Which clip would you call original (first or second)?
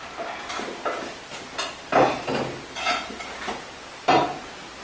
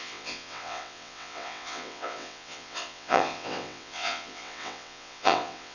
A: first